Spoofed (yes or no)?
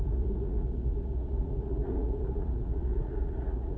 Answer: yes